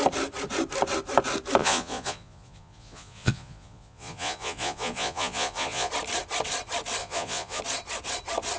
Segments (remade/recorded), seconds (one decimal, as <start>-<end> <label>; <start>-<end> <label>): 0.0-1.6 recorded; 1.6-5.9 remade; 5.9-7.0 recorded; 7.0-7.6 remade; 7.6-8.6 recorded